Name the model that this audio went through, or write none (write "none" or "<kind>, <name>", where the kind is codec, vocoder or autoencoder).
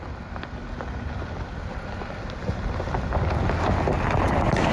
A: none